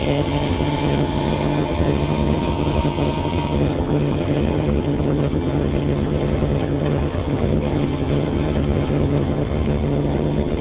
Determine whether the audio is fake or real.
fake